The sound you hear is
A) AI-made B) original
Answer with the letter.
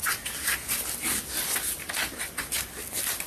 B